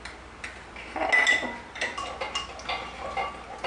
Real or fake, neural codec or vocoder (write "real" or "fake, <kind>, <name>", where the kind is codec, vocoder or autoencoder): real